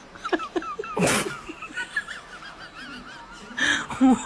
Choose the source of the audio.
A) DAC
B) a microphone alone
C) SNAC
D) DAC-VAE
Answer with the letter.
B